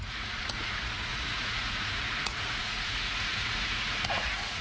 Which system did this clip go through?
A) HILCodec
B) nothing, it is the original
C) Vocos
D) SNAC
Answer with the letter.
C